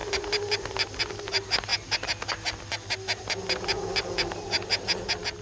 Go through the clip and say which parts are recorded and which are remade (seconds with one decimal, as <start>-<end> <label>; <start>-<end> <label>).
0.0-5.4 recorded